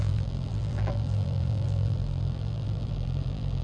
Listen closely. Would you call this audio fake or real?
fake